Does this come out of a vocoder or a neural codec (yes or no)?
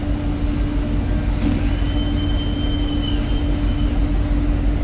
no